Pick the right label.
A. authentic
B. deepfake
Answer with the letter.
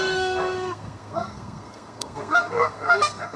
B